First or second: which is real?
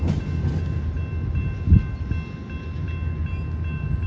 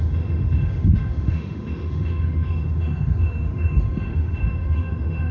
first